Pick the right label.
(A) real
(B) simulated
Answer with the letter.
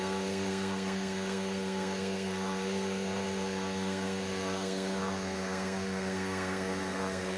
B